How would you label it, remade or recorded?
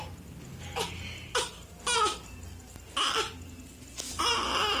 recorded